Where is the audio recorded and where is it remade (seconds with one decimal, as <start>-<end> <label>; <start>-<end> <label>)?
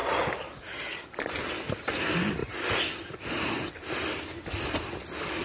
0.0-5.4 recorded